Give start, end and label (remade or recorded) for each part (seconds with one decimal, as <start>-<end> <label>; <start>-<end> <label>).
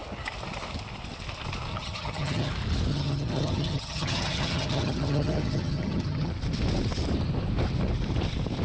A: 0.0-1.7 recorded; 1.7-2.5 remade; 2.5-2.9 recorded; 2.9-6.3 remade; 6.3-8.6 recorded